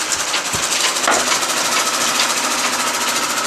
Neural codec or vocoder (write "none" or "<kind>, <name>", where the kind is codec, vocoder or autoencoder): none